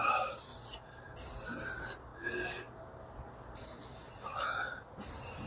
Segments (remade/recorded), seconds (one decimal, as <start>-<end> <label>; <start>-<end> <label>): 0.0-2.1 remade; 2.1-5.0 recorded; 5.0-5.5 remade